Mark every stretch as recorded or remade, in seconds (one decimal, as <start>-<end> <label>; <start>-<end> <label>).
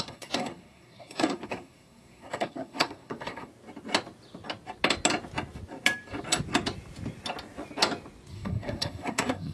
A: 0.0-3.5 remade; 3.5-8.3 recorded; 8.3-9.5 remade